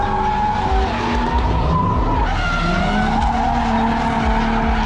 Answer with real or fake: real